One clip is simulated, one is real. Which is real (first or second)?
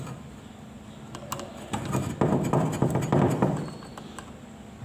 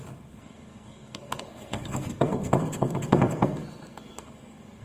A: first